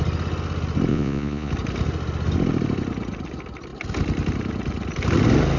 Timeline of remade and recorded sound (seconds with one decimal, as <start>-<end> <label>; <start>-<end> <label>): 0.0-0.9 recorded; 0.9-1.5 remade; 1.5-5.6 recorded